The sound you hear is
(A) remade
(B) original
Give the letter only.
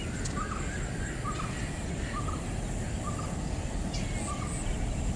B